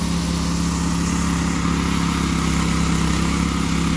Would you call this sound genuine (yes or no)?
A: yes